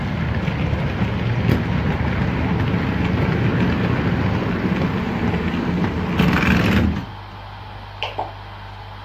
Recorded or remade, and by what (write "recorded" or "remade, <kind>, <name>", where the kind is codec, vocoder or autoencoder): recorded